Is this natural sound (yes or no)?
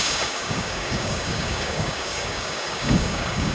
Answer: no